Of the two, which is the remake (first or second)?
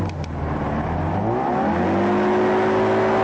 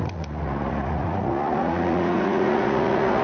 second